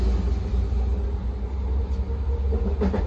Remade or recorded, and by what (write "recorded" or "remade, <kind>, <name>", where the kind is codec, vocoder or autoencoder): recorded